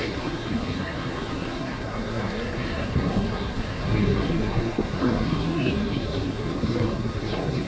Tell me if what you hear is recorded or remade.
remade